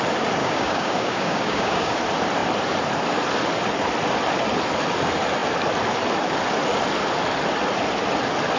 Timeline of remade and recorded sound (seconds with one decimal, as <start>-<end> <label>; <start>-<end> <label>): 0.0-0.4 recorded; 0.4-2.0 remade; 2.0-8.6 recorded